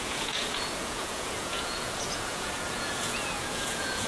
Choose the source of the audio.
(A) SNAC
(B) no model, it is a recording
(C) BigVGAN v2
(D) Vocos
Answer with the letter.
D